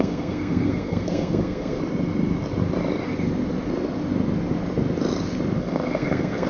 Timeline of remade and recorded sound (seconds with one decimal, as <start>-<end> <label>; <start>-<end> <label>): 0.0-1.8 remade; 1.8-5.6 recorded; 5.6-6.5 remade